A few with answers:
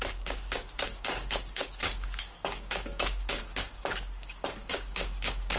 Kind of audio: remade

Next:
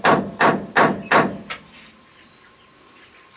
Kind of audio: recorded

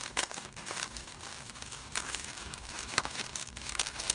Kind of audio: remade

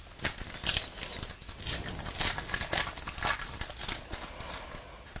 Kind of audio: recorded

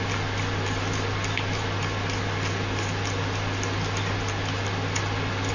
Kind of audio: recorded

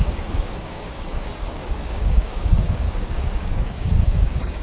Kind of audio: remade